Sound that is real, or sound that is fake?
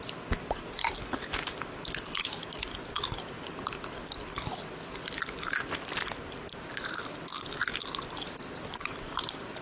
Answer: real